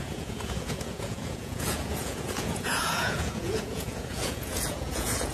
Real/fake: fake